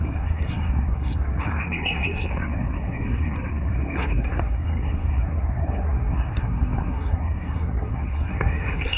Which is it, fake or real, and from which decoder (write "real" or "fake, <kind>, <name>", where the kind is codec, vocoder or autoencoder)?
fake, codec, SNAC